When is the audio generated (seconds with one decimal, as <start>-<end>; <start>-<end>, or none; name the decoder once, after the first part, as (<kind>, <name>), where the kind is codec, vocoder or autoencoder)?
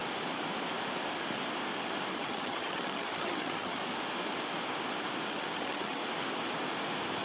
2.1-3.8 (vocoder, HiFi-GAN); 5.3-6.0